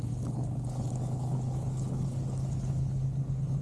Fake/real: fake